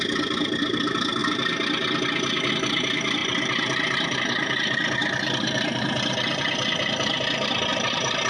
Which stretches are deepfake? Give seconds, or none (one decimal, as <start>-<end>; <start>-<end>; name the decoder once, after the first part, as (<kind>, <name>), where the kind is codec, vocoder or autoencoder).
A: 5.0-6.5 (vocoder, BigVGAN v2); 7.7-8.3